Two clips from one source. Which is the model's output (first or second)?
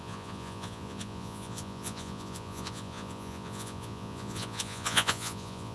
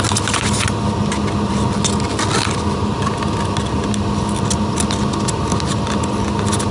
first